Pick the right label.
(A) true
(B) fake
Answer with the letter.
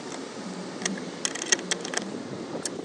A